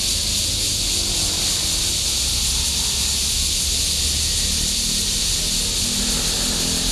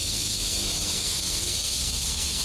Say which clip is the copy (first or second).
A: second